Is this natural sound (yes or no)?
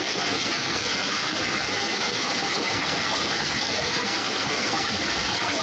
no